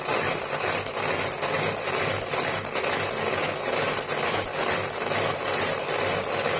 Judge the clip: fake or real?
real